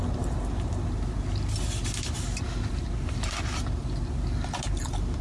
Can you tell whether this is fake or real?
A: real